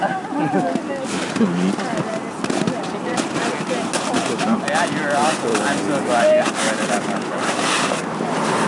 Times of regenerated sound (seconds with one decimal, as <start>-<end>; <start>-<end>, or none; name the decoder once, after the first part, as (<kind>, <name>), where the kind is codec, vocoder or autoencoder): none